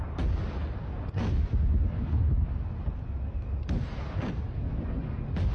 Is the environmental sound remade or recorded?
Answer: recorded